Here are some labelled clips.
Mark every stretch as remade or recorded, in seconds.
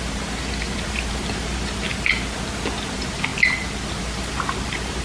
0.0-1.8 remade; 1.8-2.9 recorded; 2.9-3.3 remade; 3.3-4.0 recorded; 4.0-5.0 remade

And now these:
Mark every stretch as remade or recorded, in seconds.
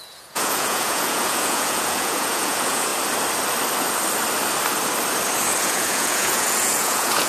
0.0-2.9 remade; 2.9-5.6 recorded; 5.6-7.3 remade